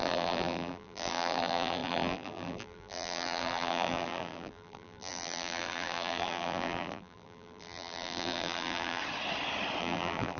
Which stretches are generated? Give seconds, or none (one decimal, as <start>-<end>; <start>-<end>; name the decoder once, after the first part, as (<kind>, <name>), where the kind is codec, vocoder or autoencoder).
0.0-9.0 (vocoder, BigVGAN v2); 9.8-10.4

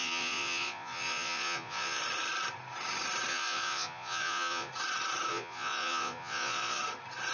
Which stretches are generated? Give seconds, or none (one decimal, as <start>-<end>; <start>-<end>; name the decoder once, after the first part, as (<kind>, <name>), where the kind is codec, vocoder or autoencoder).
0.0-2.0 (vocoder, Vocos); 3.3-4.7; 5.3-6.8